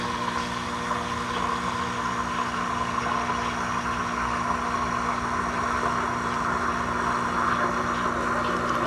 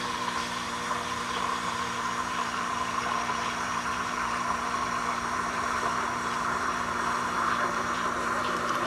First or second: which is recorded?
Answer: first